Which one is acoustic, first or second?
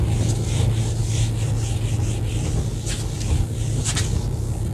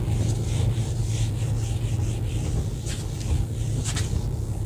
first